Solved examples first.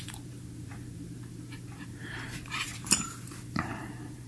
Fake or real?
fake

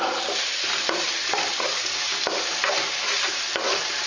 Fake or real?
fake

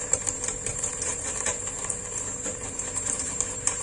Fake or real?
fake